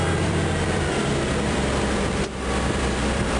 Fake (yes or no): yes